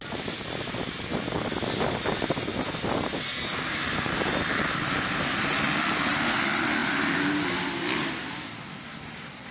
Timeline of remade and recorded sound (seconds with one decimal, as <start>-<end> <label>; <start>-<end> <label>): 0.0-9.5 recorded